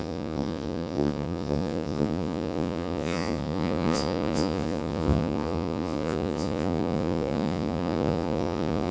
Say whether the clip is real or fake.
fake